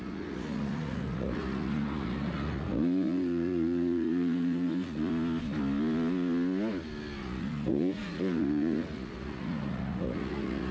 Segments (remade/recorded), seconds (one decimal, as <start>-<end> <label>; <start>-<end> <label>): 0.0-5.1 remade; 5.1-7.2 recorded; 7.2-10.7 remade